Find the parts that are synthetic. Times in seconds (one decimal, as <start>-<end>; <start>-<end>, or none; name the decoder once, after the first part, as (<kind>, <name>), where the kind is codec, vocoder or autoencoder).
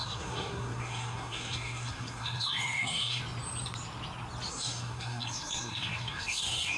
0.0-3.2 (codec, SNAC); 4.5-6.8